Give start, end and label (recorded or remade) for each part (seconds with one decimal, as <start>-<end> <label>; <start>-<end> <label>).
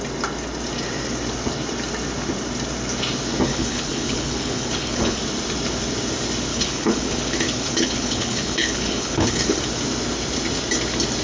0.0-3.5 recorded; 3.5-5.2 remade; 5.2-6.5 recorded; 6.5-9.6 remade; 9.6-11.2 recorded